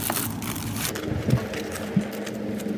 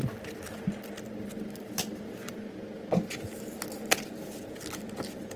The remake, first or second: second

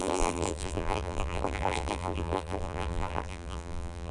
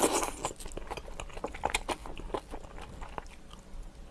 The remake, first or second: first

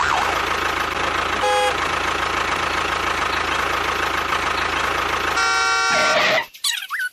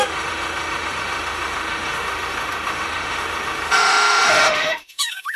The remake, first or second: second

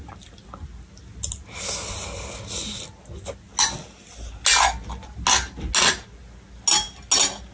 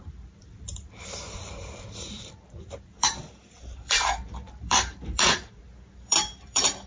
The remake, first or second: second